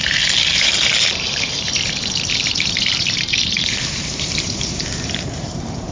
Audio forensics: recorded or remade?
remade